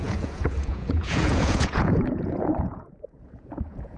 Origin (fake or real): fake